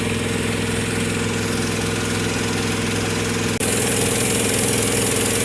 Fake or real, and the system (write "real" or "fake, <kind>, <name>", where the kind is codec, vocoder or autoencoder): real